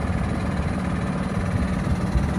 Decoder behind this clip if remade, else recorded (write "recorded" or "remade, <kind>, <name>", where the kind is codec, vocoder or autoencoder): recorded